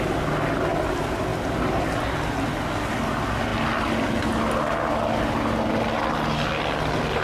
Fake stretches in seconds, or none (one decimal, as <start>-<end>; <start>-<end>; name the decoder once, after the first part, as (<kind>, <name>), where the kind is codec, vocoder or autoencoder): none